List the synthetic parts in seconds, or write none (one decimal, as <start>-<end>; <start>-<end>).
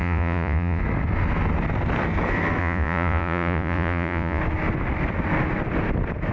0.0-0.8; 2.6-4.4